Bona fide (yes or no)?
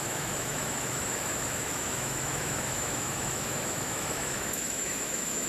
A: no